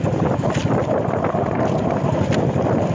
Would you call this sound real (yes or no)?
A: yes